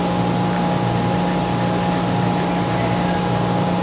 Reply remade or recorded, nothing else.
recorded